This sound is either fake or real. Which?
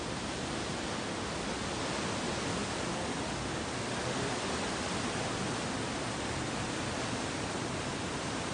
real